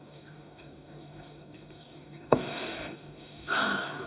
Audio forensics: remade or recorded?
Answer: remade